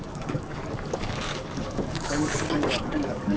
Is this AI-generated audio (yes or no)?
yes